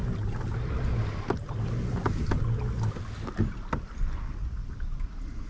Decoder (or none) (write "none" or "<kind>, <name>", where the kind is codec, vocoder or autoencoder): none